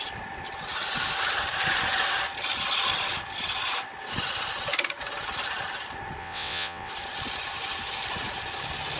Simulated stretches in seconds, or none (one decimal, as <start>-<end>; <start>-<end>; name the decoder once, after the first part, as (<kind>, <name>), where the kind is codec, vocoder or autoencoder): 6.2-6.9 (vocoder, WaveNeXt)